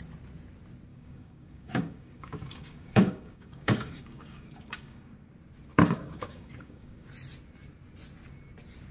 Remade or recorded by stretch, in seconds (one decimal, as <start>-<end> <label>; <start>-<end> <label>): 0.0-0.9 recorded; 0.9-5.1 remade; 5.1-5.7 recorded; 5.7-7.1 remade; 7.1-8.9 recorded